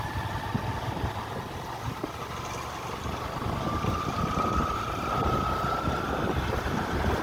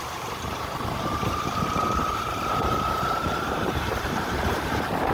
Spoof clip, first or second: second